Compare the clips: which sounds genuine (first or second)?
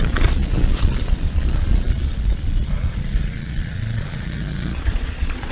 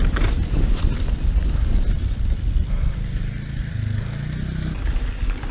second